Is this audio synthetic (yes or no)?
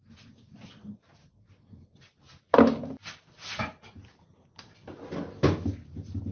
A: no